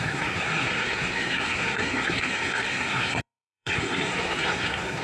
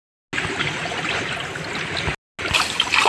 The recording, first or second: second